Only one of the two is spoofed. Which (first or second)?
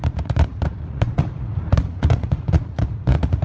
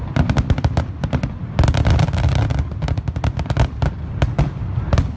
first